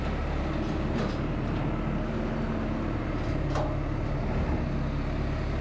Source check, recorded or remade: recorded